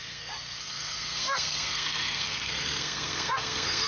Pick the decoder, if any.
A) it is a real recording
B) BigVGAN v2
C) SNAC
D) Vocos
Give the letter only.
C